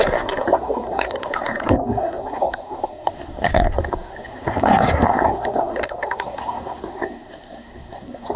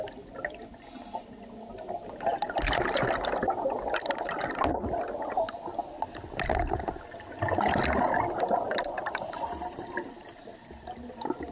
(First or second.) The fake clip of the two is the first